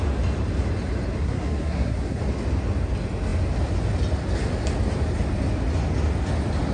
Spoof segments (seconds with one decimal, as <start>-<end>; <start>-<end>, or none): 1.2-2.2